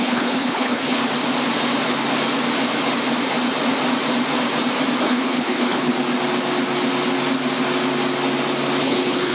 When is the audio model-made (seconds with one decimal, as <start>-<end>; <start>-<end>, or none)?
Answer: 0.0-1.0; 5.0-5.9; 8.8-9.3